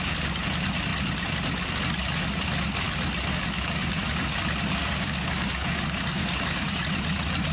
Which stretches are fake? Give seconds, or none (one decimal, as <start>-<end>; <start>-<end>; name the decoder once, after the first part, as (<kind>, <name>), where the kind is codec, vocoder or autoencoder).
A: 3.3-3.9 (codec, DAC); 4.8-6.8